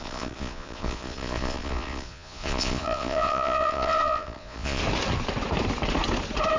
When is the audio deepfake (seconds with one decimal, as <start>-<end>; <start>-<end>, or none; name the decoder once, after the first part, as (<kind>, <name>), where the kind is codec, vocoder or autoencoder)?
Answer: 0.0-4.8 (vocoder, Vocos)